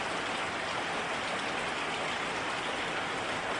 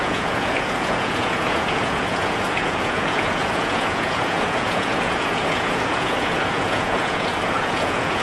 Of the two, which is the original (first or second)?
first